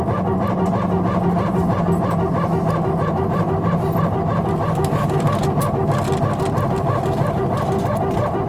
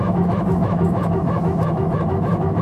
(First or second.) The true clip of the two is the first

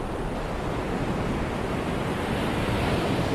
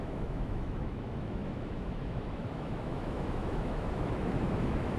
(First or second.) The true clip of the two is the first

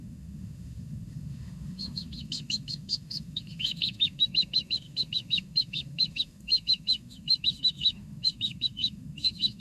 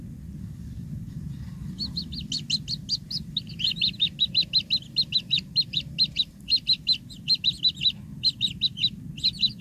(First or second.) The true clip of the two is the second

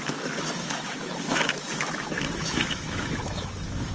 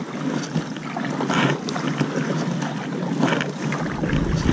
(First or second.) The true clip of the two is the second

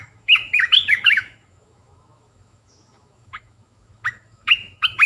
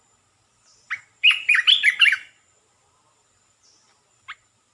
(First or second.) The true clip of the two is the second